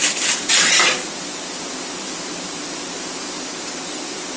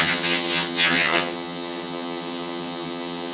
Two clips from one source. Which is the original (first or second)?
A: first